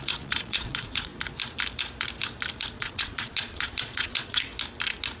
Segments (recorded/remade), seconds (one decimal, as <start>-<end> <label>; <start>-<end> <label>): 0.0-1.1 remade; 1.1-2.7 recorded; 2.7-4.5 remade; 4.5-5.2 recorded